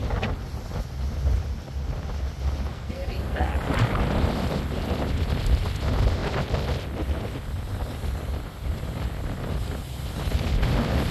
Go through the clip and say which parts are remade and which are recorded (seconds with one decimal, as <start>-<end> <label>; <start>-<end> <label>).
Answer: 0.0-2.7 recorded; 2.7-3.5 remade; 3.5-11.1 recorded